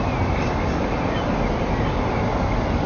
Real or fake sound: real